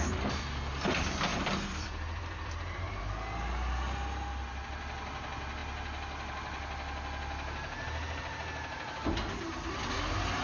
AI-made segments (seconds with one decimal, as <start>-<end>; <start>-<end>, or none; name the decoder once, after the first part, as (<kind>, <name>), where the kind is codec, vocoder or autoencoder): 1.3-3.0 (vocoder, BigVGAN v2)